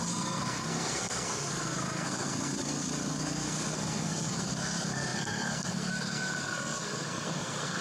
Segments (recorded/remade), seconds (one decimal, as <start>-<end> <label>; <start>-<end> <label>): 0.0-7.8 remade